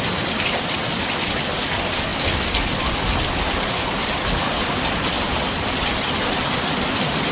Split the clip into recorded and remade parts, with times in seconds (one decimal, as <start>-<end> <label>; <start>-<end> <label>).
0.0-7.3 recorded